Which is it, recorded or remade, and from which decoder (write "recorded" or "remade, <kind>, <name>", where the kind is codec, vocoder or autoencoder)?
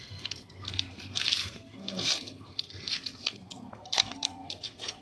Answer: remade, codec, SNAC